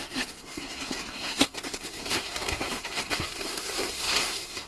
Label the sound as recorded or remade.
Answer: remade